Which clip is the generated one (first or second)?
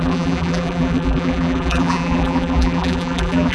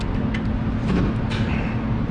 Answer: first